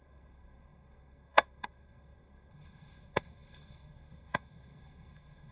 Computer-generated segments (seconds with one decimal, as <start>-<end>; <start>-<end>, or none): 0.0-5.5